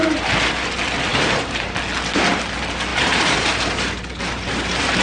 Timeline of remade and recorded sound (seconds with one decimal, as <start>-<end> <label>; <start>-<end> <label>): 0.0-0.5 remade; 0.5-1.1 recorded; 1.1-1.8 remade; 1.8-2.9 recorded; 2.9-5.0 remade